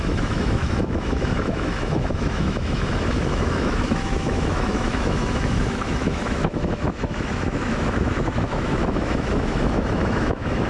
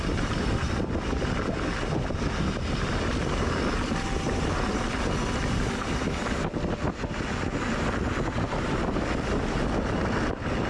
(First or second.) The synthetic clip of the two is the first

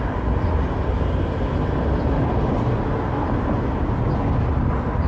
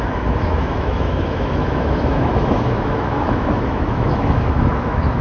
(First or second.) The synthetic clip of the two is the second